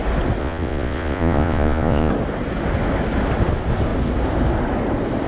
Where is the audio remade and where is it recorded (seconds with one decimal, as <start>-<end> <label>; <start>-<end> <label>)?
0.0-0.4 recorded; 0.4-2.1 remade; 2.1-5.3 recorded